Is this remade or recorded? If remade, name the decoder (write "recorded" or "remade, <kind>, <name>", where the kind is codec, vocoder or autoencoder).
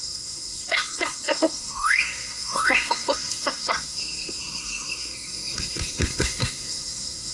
remade, codec, SNAC